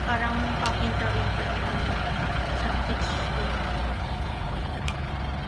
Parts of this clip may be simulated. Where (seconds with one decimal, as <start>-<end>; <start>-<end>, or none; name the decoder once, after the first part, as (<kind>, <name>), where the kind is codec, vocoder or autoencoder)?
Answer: 1.3-3.1 (codec, HILCodec); 3.9-5.1